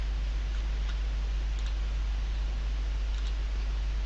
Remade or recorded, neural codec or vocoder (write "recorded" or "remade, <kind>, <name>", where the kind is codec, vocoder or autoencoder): recorded